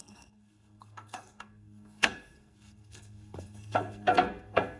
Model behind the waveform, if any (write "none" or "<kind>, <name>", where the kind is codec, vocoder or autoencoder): codec, SNAC